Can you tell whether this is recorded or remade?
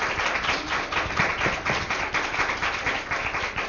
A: recorded